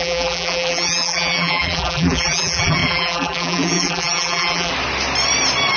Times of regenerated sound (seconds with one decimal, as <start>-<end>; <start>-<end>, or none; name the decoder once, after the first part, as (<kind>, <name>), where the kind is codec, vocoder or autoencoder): 0.0-4.7 (vocoder, BigVGAN v2)